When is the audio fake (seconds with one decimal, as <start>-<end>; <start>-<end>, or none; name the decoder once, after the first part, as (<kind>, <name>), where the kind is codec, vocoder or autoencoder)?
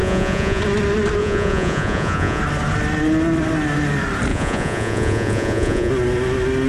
0.0-0.6 (vocoder, Vocos); 1.2-2.4; 4.3-5.9